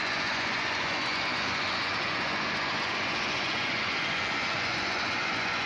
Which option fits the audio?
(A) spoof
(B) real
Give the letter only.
A